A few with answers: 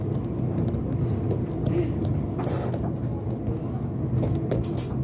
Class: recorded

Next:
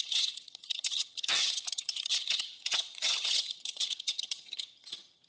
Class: remade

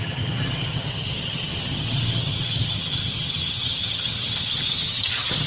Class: remade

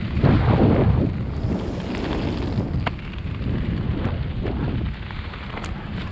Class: recorded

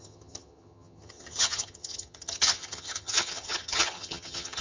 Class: remade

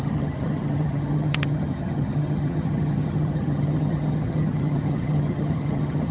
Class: remade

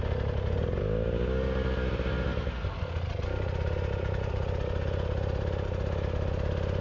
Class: recorded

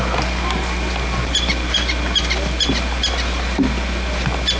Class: recorded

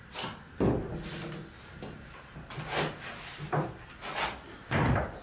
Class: recorded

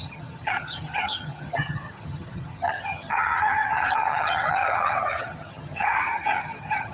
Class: remade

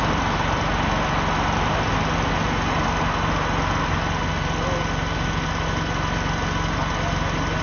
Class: recorded